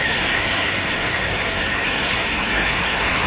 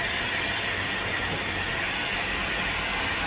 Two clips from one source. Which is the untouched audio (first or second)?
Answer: second